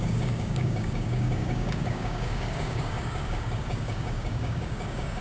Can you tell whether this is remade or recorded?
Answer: remade